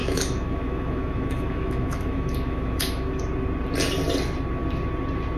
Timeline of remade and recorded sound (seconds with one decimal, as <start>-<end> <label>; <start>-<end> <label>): 0.0-3.2 remade; 3.2-5.4 recorded